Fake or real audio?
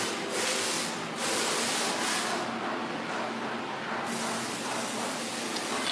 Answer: real